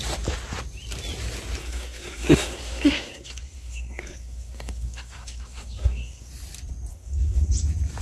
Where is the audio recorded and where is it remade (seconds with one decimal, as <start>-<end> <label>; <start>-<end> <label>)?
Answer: 0.0-1.6 recorded; 1.6-6.3 remade; 6.3-6.9 recorded; 6.9-7.5 remade; 7.5-8.0 recorded